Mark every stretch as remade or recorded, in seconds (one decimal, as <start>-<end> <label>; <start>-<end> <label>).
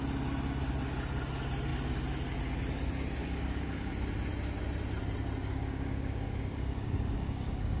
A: 0.0-3.2 recorded; 3.2-3.9 remade; 3.9-5.4 recorded; 5.4-7.8 remade